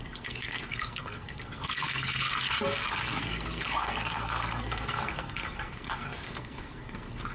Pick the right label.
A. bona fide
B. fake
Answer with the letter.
B